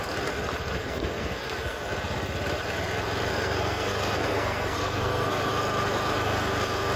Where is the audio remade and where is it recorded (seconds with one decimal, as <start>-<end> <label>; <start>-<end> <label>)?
0.0-0.8 recorded; 0.8-1.8 remade; 1.8-3.3 recorded; 3.3-5.5 remade; 5.5-7.0 recorded